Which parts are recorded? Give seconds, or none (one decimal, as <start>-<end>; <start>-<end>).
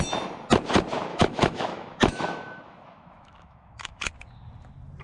0.0-1.1; 4.1-5.0